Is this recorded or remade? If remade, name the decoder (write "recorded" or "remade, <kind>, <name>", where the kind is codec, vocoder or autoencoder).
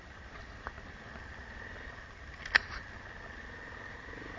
recorded